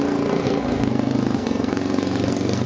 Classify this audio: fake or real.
fake